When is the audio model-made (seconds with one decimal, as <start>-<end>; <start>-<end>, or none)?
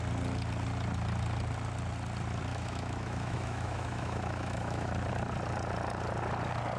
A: 2.5-4.9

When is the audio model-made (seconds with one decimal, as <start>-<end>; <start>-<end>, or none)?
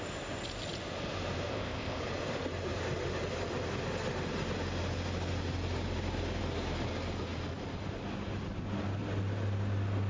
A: 1.5-2.0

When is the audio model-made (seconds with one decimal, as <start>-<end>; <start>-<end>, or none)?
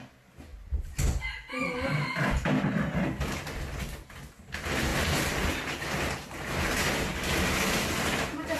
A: 4.9-6.5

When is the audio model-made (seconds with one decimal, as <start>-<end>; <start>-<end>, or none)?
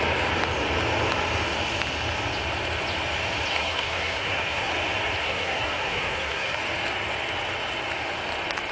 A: 3.5-4.7; 5.2-6.6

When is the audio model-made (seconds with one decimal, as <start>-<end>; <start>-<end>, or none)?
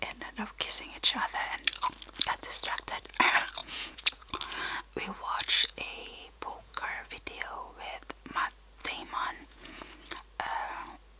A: 3.6-4.3; 5.0-7.1; 8.8-9.8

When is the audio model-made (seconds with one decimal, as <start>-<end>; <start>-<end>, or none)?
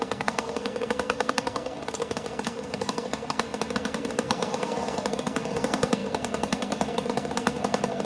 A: 0.0-8.0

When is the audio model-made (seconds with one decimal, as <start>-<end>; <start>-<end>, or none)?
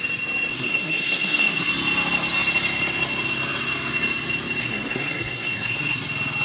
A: 0.5-1.7; 4.6-6.0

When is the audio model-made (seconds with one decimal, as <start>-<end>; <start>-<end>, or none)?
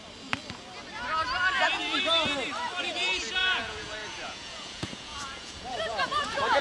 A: 3.4-6.6